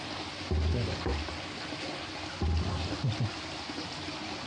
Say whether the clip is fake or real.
real